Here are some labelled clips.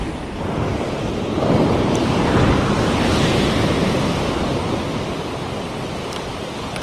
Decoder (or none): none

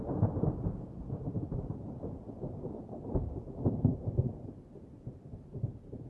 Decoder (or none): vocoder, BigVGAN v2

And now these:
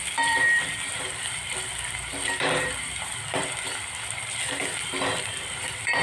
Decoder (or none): vocoder, BigVGAN v2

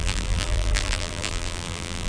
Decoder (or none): vocoder, BigVGAN v2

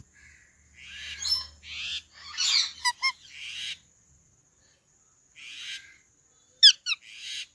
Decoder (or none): none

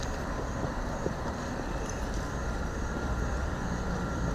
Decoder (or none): vocoder, BigVGAN v2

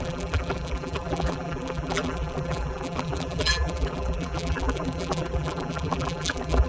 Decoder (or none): vocoder, BigVGAN v2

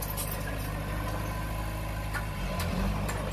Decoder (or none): none